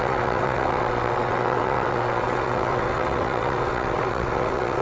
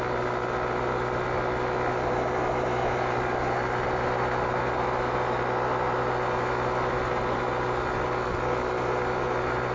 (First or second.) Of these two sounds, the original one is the second